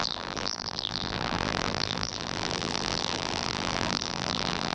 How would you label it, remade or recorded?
remade